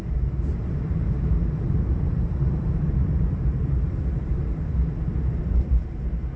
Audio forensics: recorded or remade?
remade